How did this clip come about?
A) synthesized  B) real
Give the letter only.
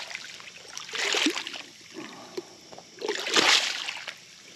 B